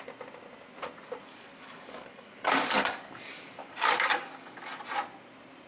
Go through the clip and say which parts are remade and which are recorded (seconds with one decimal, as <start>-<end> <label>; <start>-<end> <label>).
0.0-1.3 recorded; 1.3-4.6 remade; 4.6-5.7 recorded